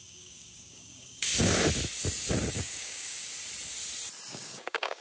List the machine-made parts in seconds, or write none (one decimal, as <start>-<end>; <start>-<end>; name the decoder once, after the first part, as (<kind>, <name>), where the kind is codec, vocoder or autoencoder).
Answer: 0.0-1.3 (codec, DAC); 2.5-3.3; 4.3-5.0